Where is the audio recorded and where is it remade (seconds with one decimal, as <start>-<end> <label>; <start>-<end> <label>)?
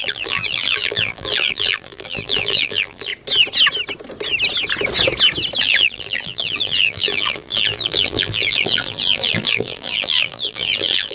0.0-3.1 remade; 3.1-5.6 recorded; 5.6-11.1 remade